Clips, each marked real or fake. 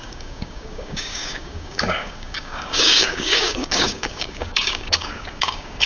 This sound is fake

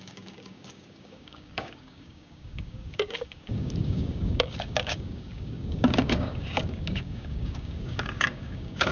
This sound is fake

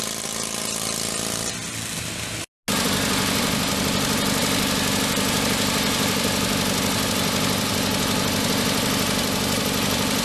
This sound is real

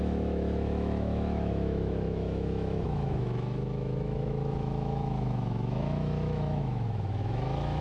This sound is fake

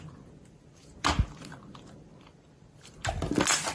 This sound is real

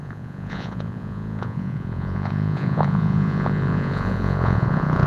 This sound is fake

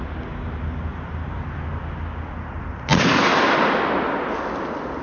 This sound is real